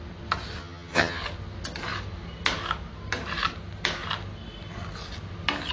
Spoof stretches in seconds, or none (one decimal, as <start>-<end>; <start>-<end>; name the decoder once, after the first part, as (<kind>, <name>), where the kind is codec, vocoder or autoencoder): 0.6-1.2 (vocoder, HiFi-GAN)